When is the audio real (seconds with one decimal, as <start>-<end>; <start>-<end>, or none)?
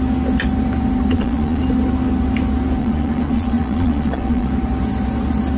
0.0-1.1; 1.6-2.8; 4.5-5.6